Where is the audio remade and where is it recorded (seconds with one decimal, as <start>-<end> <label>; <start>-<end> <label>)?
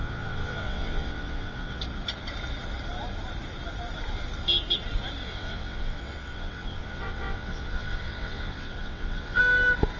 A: 0.0-1.8 remade; 1.8-5.2 recorded; 5.2-9.4 remade; 9.4-10.0 recorded